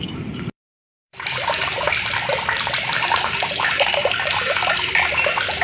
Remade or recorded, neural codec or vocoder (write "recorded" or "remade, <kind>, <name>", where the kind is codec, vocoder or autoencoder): remade, vocoder, BigVGAN v2